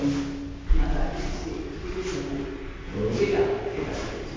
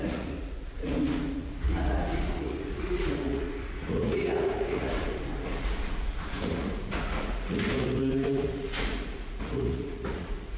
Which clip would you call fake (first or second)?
second